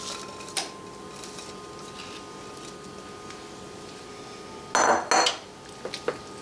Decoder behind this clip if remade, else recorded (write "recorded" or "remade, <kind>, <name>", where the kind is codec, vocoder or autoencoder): recorded